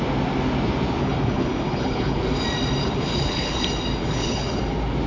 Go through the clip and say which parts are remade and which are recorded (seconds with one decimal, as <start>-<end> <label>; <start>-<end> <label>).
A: 0.0-1.0 recorded; 1.0-2.2 remade; 2.2-2.8 recorded; 2.8-3.6 remade; 3.6-4.0 recorded; 4.0-4.6 remade; 4.6-5.1 recorded

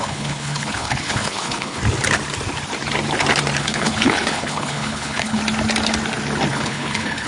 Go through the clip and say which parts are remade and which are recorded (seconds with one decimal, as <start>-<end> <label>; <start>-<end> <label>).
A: 0.0-1.8 remade; 1.8-3.6 recorded; 3.6-5.4 remade; 5.4-6.5 recorded; 6.5-7.3 remade

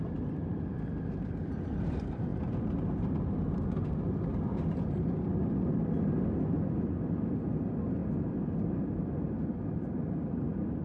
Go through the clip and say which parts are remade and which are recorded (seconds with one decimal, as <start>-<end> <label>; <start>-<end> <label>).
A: 0.0-10.8 recorded

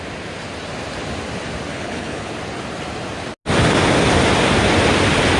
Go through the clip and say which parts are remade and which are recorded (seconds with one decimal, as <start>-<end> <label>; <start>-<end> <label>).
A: 0.0-1.7 recorded; 1.7-2.3 remade; 2.3-5.4 recorded

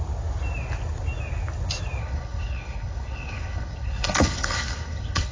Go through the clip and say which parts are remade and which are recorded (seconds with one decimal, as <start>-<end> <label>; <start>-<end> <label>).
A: 0.0-2.0 recorded; 2.0-5.3 remade

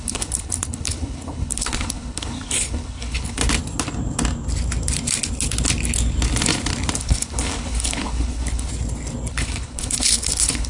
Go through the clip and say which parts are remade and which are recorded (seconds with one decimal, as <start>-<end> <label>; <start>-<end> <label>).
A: 0.0-3.4 remade; 3.4-7.0 recorded; 7.0-8.7 remade; 8.7-9.3 recorded; 9.3-10.7 remade

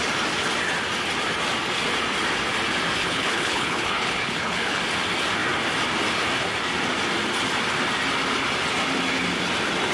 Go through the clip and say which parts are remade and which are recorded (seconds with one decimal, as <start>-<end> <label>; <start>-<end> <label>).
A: 0.0-3.0 recorded; 3.0-4.8 remade; 4.8-9.9 recorded